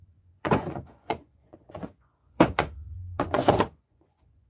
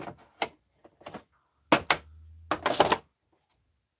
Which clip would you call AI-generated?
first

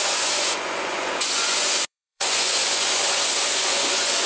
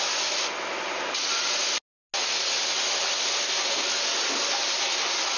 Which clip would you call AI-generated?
first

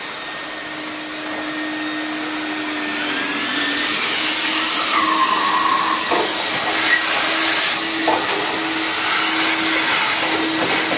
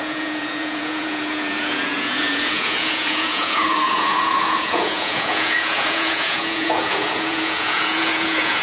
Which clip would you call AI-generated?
second